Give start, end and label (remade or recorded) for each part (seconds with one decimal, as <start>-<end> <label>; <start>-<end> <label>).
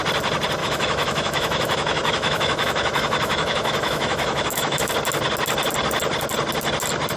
0.0-0.6 recorded; 0.6-4.9 remade; 4.9-7.2 recorded